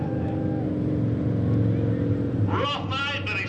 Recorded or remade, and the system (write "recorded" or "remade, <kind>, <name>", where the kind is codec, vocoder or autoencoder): recorded